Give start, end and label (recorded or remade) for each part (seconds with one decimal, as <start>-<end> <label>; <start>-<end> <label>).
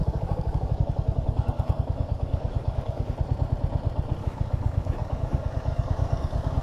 0.0-3.1 remade; 3.1-4.2 recorded; 4.2-6.6 remade